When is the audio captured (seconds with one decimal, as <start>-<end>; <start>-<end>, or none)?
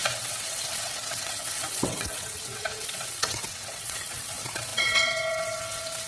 none